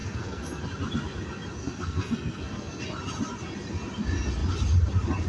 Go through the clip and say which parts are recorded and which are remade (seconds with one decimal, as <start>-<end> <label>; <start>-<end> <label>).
0.0-0.6 remade; 0.6-1.6 recorded; 1.6-2.8 remade; 2.8-5.3 recorded